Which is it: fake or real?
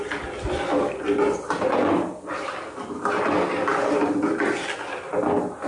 real